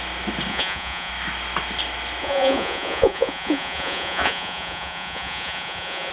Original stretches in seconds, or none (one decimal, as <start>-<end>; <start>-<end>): 0.0-0.5; 1.1-2.2